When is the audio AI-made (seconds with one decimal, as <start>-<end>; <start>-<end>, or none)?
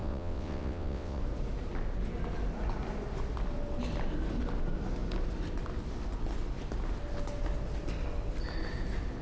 0.0-1.2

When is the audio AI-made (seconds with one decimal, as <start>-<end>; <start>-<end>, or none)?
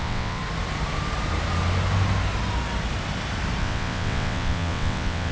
0.0-0.4; 3.6-5.3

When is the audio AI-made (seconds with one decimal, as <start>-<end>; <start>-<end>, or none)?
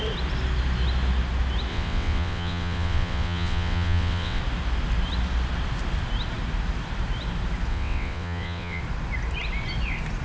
1.7-4.4; 7.7-8.8